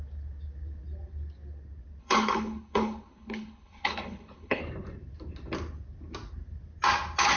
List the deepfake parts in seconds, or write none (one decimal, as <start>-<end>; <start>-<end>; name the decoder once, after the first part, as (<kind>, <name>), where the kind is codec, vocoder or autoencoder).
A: 2.0-4.6 (codec, HILCodec)